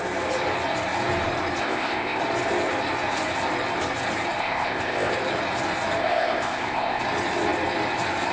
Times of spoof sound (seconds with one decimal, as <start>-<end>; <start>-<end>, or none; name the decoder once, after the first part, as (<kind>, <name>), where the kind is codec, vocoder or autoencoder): 1.6-2.2 (codec, ZipCodec); 4.4-5.1; 6.0-7.0